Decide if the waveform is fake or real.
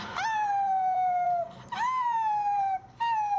fake